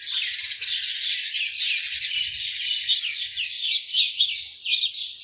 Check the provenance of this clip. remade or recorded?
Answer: recorded